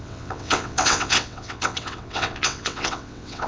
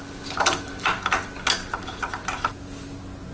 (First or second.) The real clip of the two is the second